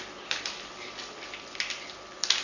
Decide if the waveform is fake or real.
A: real